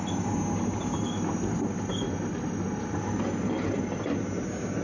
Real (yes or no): yes